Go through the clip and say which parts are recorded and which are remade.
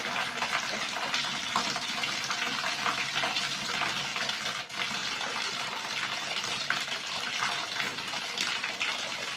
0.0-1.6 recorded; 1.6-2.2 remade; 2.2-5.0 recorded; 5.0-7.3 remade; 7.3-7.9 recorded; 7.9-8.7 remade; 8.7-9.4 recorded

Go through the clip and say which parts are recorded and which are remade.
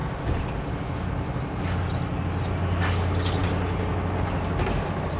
0.0-5.2 recorded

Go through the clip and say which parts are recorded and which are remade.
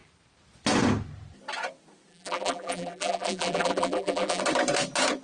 0.0-2.1 recorded; 2.1-4.4 remade; 4.4-5.2 recorded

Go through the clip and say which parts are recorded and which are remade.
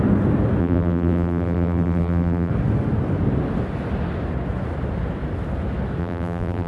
0.0-0.6 recorded; 0.6-2.5 remade; 2.5-6.0 recorded; 6.0-6.7 remade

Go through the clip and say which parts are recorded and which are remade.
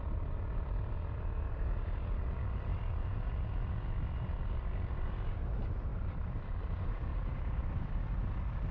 0.0-7.1 recorded; 7.1-8.2 remade; 8.2-8.7 recorded